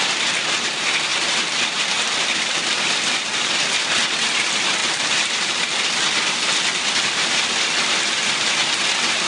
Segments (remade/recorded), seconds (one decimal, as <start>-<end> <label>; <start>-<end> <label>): 0.0-1.1 recorded; 1.1-3.5 remade; 3.5-4.8 recorded; 4.8-5.6 remade; 5.6-9.3 recorded